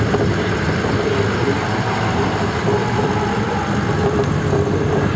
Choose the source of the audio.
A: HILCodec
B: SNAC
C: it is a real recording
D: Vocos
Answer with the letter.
C